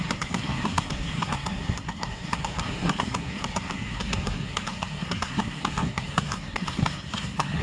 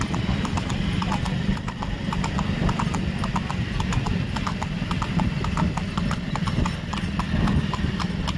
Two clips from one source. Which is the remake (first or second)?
first